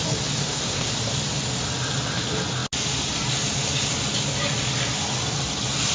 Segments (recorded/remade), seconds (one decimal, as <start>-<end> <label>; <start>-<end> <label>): 0.0-0.4 recorded; 0.4-0.9 remade; 0.9-5.9 recorded